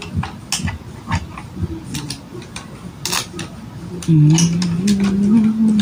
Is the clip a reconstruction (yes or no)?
no